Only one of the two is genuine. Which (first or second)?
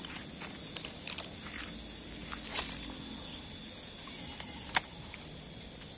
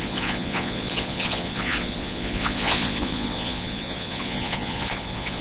first